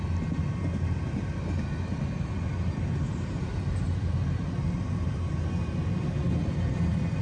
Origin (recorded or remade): recorded